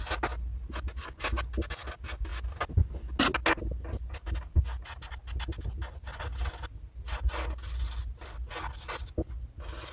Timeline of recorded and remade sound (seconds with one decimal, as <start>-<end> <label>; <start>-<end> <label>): 0.0-9.9 recorded